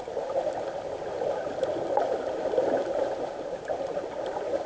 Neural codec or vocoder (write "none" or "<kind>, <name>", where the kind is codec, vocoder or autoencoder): vocoder, BigVGAN v2